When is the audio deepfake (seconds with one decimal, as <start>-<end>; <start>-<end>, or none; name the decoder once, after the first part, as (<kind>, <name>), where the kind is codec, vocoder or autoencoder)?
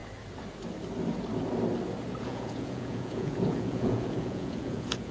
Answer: 2.2-5.1 (vocoder, Vocos)